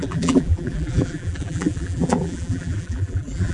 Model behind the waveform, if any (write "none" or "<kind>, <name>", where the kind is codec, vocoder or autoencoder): vocoder, BigVGAN v2